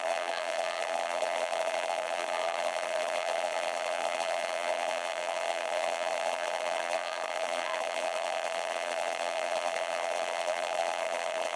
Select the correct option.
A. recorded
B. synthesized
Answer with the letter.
B